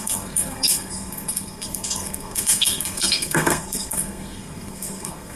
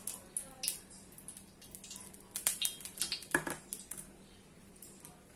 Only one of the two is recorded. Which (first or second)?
second